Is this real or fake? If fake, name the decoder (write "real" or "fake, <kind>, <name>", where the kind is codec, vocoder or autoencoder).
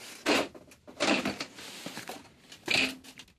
real